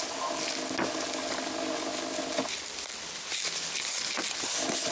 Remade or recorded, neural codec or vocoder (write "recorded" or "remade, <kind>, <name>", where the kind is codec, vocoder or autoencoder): recorded